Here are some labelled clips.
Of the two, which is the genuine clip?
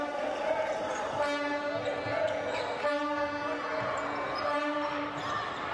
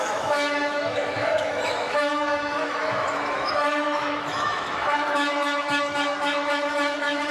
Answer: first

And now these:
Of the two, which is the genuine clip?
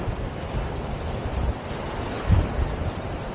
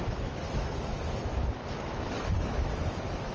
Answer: first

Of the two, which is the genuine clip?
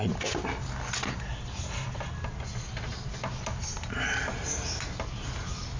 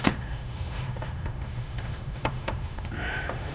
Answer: first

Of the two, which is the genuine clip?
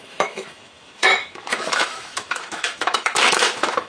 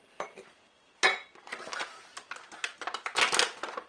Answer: second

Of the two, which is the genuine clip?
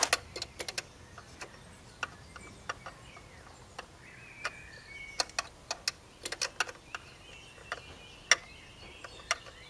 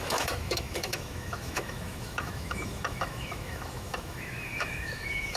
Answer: first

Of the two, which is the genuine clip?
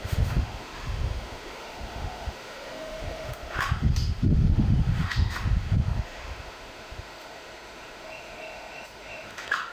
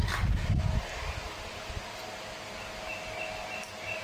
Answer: second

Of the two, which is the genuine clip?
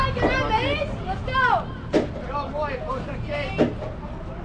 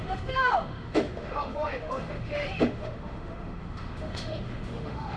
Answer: first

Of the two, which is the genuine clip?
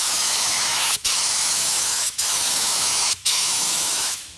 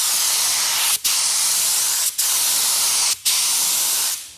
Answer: second